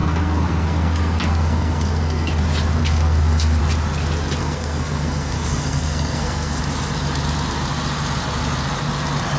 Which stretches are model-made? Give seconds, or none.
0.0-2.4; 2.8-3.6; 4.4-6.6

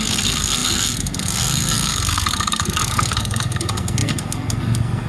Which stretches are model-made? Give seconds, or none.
0.0-5.1

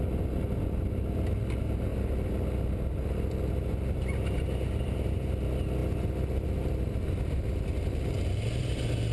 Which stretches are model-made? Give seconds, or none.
none

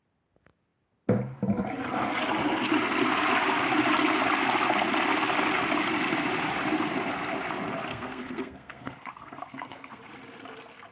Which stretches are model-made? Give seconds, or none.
7.9-10.0

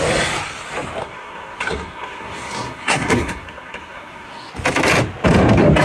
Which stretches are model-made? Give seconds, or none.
1.0-4.5

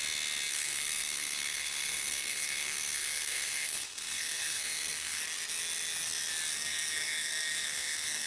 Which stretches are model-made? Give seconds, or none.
0.5-5.2; 6.5-8.3